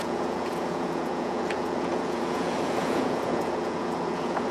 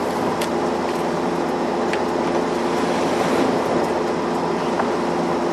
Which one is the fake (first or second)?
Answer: first